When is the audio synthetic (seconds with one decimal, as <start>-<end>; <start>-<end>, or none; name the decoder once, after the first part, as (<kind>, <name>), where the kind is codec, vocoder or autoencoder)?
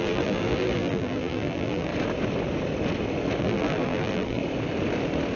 0.0-1.9 (vocoder, BigVGAN v2); 3.4-4.4